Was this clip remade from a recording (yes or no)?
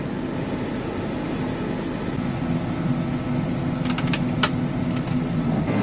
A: no